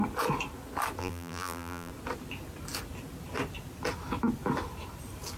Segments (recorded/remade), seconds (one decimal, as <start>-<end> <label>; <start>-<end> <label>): 0.0-1.0 recorded; 1.0-1.9 remade; 1.9-5.4 recorded